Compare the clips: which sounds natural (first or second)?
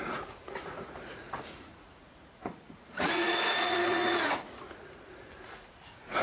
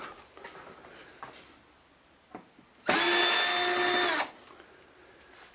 second